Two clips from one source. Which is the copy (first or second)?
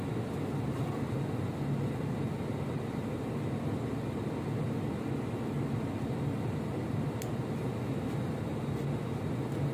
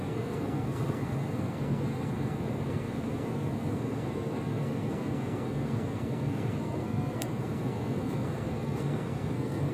second